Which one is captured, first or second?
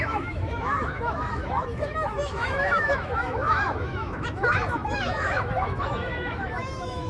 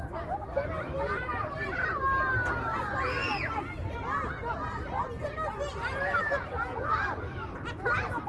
second